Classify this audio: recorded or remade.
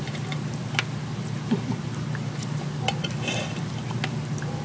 remade